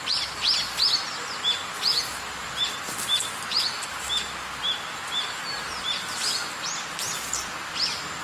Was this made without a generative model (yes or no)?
yes